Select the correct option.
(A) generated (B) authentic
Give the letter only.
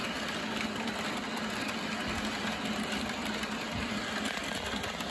B